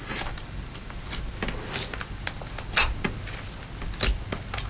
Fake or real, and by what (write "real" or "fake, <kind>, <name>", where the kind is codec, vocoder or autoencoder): real